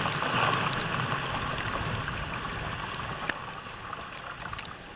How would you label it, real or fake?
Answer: real